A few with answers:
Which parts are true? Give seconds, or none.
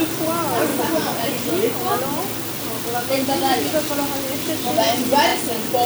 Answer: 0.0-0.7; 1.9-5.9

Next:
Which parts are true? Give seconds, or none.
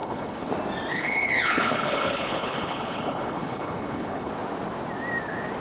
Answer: 0.5-0.9; 4.3-5.6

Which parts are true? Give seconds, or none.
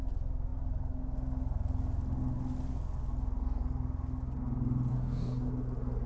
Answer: 0.0-4.9; 5.5-6.1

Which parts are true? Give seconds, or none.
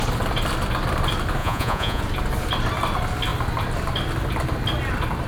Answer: 0.0-1.4; 2.0-5.3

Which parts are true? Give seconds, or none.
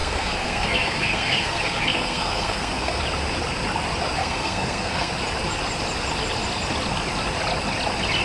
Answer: 3.0-4.2; 5.1-8.2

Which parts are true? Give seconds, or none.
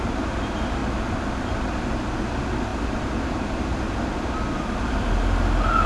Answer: 0.0-5.9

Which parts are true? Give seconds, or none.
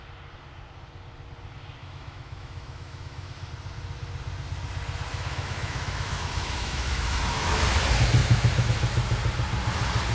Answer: 0.0-1.8; 3.5-5.1; 7.6-8.2; 8.7-10.1